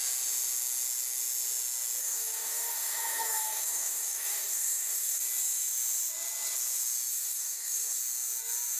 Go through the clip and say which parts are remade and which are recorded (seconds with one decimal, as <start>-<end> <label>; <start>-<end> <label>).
0.0-2.0 recorded; 2.0-5.2 remade; 5.2-7.1 recorded; 7.1-8.0 remade; 8.0-8.8 recorded